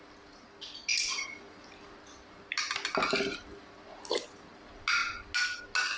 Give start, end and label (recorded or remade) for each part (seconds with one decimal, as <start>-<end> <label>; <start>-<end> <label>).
0.0-6.0 recorded